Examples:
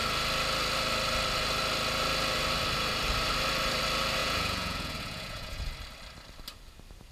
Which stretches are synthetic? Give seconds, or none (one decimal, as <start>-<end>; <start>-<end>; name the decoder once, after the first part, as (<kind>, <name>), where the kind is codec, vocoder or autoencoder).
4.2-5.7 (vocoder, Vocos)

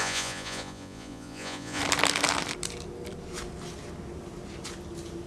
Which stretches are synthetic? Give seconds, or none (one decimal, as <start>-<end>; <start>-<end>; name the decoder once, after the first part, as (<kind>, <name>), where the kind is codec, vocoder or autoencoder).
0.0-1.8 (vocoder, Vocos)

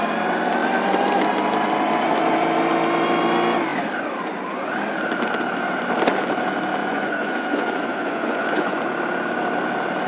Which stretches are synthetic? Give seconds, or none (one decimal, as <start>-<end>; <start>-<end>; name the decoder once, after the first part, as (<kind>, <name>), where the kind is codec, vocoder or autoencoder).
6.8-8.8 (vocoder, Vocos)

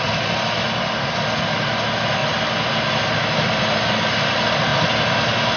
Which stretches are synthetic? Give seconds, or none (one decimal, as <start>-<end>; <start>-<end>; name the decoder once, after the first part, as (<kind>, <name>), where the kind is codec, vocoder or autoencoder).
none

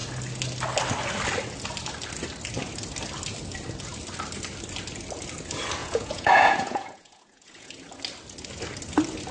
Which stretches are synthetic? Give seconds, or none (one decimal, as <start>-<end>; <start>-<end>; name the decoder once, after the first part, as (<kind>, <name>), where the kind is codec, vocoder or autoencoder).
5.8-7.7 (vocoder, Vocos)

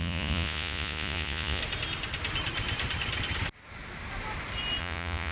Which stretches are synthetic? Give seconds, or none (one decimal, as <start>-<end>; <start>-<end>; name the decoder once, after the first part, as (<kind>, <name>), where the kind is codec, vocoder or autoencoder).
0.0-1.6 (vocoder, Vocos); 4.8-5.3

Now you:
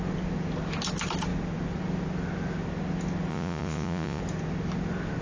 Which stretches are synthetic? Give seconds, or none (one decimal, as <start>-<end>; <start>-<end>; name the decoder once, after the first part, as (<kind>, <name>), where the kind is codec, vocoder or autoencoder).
3.3-4.2 (vocoder, Vocos)

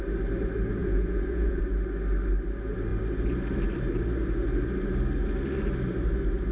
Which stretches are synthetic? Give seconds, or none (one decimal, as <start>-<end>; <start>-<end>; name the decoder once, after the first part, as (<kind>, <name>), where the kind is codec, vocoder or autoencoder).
0.8-1.6 (vocoder, Vocos)